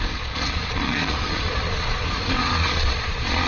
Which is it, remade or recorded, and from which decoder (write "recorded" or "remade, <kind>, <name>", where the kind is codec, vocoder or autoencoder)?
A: remade, vocoder, Vocos